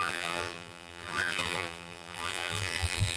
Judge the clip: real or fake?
fake